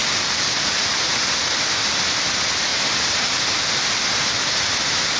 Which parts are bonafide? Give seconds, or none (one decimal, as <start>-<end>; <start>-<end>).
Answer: 0.0-5.2